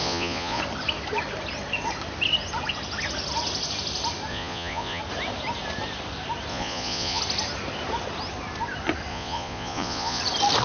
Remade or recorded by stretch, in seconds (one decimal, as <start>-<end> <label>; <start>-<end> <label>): 0.0-0.6 remade; 0.6-4.3 recorded; 4.3-5.0 remade; 5.0-6.5 recorded; 6.5-7.2 remade; 7.2-9.1 recorded; 9.1-10.2 remade; 10.2-10.6 recorded